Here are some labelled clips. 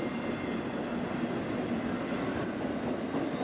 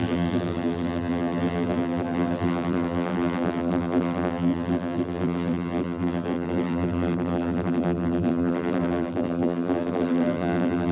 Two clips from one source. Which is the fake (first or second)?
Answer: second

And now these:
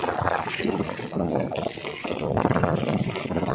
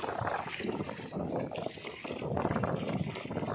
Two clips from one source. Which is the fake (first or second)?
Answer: first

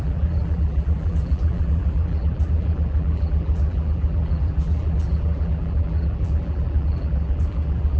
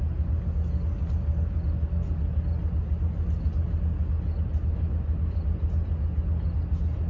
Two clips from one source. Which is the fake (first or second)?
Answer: first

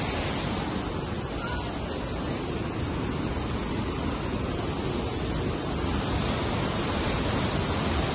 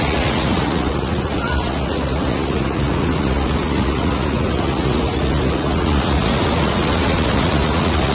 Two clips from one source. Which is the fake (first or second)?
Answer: second